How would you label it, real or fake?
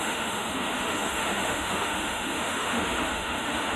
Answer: fake